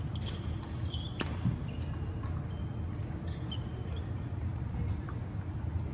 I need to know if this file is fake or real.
real